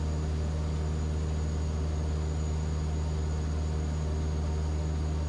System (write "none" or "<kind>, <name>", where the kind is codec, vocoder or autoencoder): none